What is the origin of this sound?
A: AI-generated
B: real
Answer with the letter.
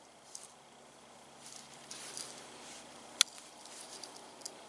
B